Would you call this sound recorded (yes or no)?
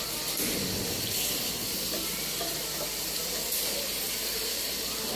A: yes